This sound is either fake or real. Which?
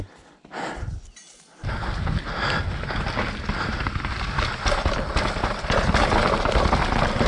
real